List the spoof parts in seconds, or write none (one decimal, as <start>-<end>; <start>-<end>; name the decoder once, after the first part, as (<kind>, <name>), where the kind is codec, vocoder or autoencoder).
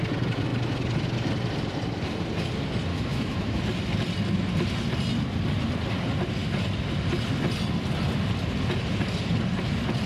2.9-3.6 (autoencoder, DAC-VAE)